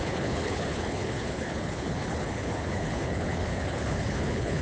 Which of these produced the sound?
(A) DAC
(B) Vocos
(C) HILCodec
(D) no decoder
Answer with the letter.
C